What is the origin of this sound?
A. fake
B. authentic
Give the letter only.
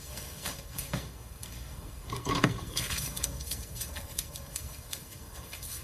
A